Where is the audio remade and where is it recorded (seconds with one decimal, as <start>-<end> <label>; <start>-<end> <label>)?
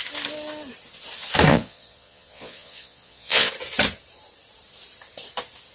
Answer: 0.0-1.5 recorded; 1.5-3.5 remade; 3.5-5.7 recorded